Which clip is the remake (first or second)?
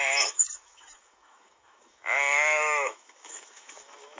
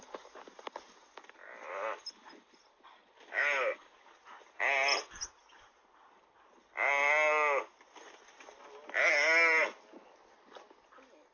first